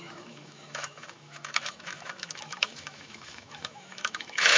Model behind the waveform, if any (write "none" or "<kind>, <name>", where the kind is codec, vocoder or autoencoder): autoencoder, DAC-VAE